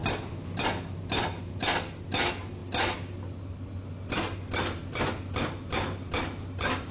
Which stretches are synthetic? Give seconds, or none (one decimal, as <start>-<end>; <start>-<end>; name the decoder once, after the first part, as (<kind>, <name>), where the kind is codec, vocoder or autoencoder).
none